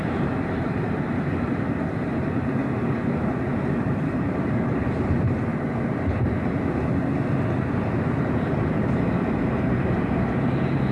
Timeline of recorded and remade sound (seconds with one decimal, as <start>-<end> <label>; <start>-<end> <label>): 0.0-2.6 remade; 2.6-3.7 recorded; 3.7-5.5 remade; 5.5-7.6 recorded; 7.6-10.9 remade